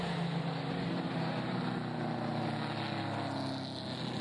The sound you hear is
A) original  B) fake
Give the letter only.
A